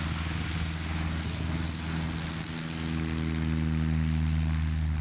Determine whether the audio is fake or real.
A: real